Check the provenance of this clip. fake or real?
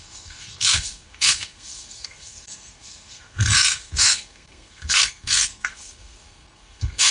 fake